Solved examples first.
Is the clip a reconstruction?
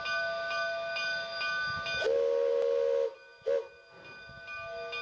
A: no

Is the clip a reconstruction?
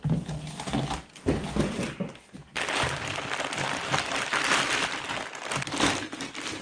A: no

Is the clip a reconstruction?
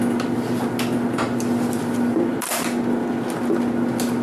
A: no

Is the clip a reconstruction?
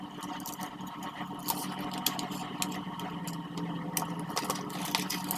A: no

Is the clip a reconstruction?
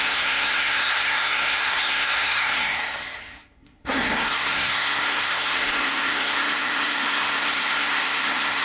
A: yes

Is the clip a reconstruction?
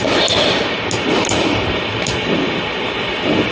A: no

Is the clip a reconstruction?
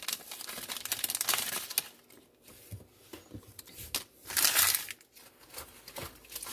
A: no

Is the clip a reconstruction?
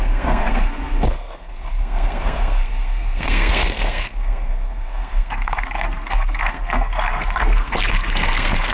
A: yes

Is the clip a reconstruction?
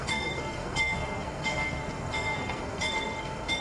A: yes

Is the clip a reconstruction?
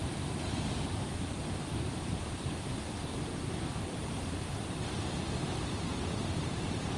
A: no